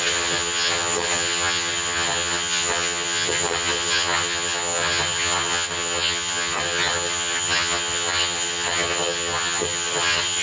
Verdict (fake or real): fake